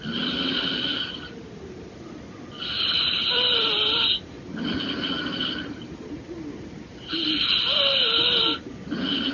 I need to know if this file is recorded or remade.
recorded